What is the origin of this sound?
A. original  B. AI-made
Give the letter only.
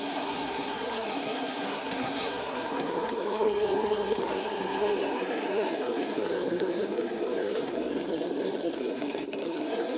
B